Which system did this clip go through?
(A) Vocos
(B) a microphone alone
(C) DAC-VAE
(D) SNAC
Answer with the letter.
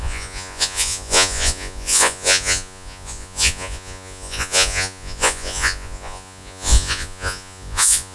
A